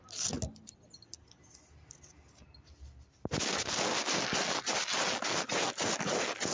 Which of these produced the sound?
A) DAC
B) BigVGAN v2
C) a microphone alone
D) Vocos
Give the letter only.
C